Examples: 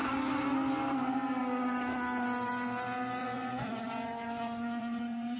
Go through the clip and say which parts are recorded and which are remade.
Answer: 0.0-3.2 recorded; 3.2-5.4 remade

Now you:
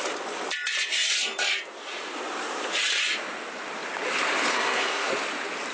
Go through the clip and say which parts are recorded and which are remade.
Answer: 0.0-4.5 recorded; 4.5-5.1 remade; 5.1-5.7 recorded

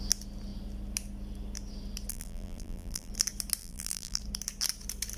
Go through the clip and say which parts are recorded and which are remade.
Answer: 0.0-2.1 recorded; 2.1-3.1 remade; 3.1-3.6 recorded; 3.6-4.2 remade; 4.2-5.2 recorded

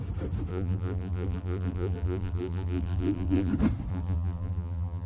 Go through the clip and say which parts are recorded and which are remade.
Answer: 0.0-0.5 recorded; 0.5-3.5 remade; 3.5-3.9 recorded; 3.9-5.1 remade

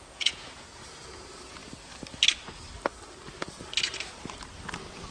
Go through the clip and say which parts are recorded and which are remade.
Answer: 0.0-1.6 remade; 1.6-5.1 recorded

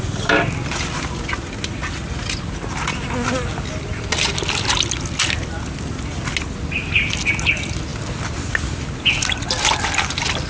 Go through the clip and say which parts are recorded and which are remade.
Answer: 0.0-10.5 recorded